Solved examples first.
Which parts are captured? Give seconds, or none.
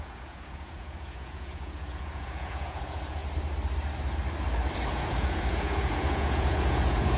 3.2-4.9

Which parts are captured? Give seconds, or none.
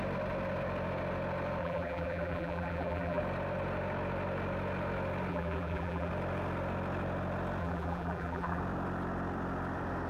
0.0-1.6; 3.2-5.3; 6.1-7.6; 8.6-10.1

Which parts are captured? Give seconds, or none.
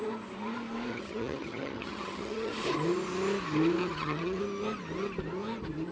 0.0-0.9; 2.5-3.8; 4.4-5.9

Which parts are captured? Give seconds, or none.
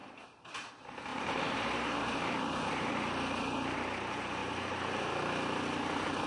0.7-1.1; 2.9-4.4; 5.1-6.3